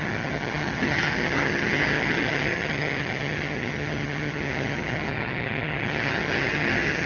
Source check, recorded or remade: remade